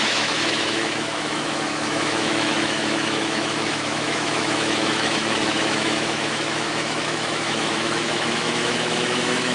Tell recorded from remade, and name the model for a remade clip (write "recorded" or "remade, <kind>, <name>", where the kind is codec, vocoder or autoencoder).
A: remade, autoencoder, DAC-VAE